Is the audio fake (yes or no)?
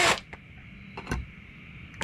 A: no